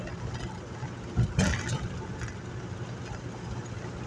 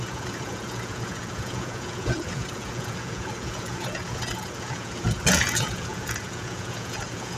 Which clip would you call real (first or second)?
first